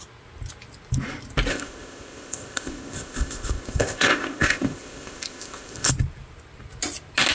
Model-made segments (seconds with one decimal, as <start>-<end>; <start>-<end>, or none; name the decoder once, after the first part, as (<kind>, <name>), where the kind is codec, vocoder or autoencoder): 1.5-5.9 (codec, ZipCodec)